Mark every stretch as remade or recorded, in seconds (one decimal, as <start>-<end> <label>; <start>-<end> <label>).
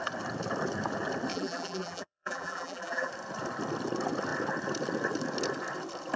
0.0-1.3 recorded; 1.3-3.1 remade; 3.1-6.2 recorded